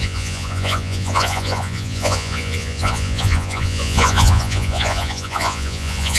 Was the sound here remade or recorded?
remade